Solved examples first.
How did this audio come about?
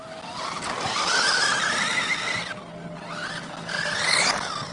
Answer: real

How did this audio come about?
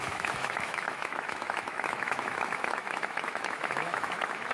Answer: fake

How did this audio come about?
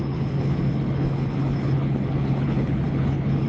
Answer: fake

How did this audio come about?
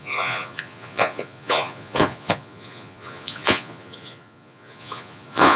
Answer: fake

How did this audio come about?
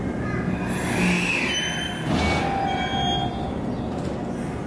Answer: real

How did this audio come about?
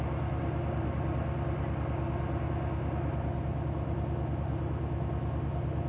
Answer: real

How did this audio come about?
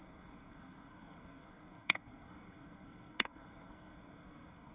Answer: fake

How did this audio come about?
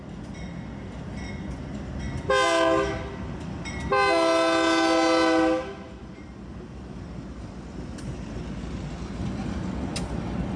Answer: real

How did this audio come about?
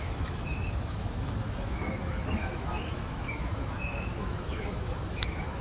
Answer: fake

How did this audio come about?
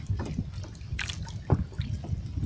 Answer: real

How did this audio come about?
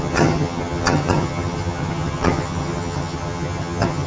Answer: fake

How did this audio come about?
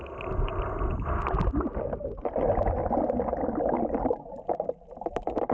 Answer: real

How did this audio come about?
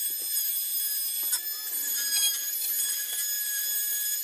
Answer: real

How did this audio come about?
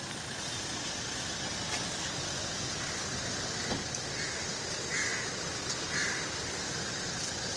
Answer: real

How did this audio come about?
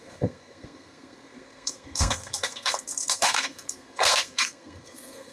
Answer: fake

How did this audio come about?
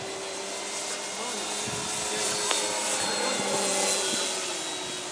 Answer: real